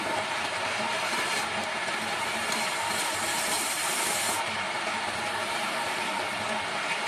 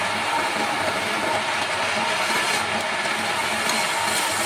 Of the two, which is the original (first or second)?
second